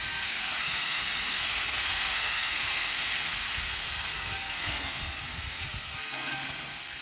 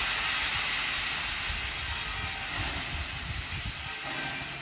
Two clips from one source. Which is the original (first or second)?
second